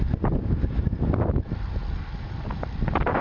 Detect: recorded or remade recorded